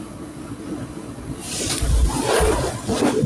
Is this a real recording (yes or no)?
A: no